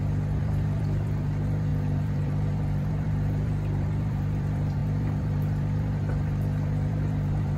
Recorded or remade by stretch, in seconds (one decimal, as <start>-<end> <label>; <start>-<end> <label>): 0.0-7.6 remade